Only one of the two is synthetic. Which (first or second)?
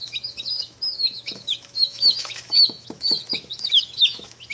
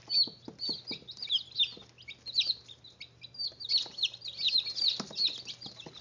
first